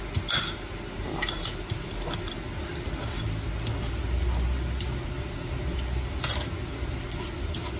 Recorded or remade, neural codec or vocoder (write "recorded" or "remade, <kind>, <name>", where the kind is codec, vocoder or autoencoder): recorded